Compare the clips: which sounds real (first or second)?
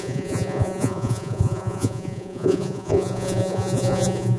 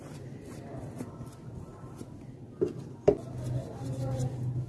second